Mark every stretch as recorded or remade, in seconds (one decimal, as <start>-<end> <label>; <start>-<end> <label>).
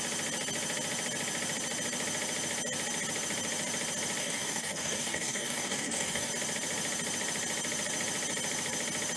0.0-4.2 recorded; 4.2-6.3 remade; 6.3-9.2 recorded